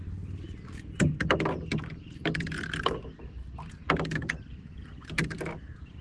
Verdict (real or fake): real